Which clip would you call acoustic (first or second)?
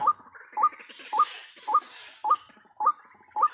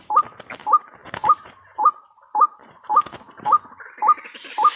first